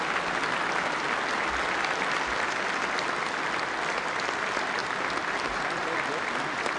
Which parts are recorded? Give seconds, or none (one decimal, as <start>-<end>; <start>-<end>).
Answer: 0.0-6.8